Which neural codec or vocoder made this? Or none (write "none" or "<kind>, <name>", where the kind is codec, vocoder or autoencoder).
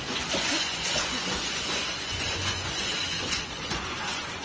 vocoder, Vocos